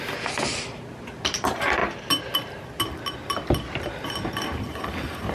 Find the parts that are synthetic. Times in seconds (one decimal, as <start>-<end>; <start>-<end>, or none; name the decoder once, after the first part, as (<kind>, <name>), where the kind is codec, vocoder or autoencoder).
none